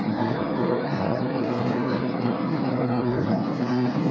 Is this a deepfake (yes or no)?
yes